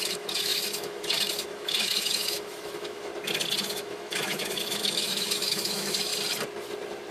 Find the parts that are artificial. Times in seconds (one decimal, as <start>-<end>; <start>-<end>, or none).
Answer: 0.0-3.1; 3.6-6.1